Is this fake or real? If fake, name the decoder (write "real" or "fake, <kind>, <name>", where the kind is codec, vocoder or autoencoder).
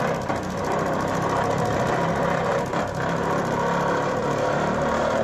real